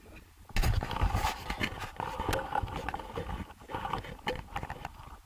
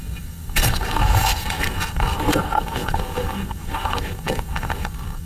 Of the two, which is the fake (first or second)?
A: second